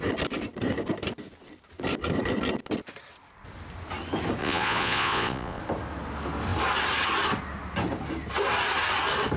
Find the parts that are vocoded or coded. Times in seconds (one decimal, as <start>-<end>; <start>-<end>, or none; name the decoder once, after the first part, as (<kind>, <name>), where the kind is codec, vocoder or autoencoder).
4.4-5.6 (vocoder, Vocos)